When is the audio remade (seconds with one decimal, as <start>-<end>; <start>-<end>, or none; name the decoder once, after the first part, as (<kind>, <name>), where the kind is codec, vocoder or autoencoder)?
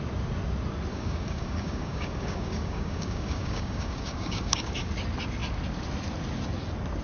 0.9-4.9 (codec, DAC)